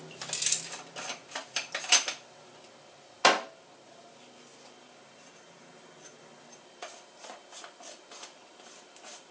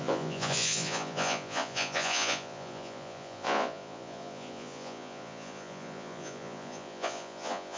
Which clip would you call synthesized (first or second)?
second